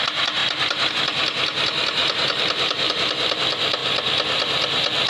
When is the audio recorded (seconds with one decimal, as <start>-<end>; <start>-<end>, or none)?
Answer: 0.0-2.0; 2.9-5.1